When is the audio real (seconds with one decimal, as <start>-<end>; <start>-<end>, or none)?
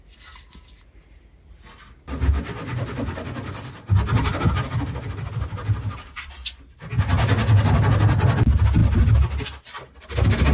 0.0-10.5